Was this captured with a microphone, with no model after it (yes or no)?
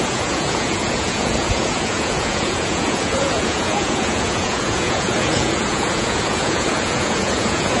no